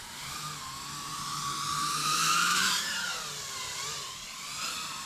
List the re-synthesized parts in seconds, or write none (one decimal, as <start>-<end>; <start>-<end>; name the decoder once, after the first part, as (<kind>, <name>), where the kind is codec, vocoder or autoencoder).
1.1-4.2 (vocoder, BigVGAN v2)